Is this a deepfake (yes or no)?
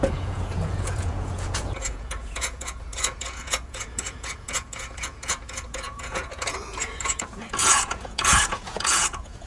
yes